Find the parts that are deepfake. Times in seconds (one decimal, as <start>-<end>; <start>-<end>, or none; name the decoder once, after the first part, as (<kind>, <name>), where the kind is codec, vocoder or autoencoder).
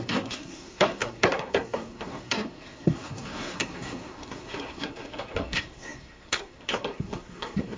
0.0-7.8 (codec, SNAC)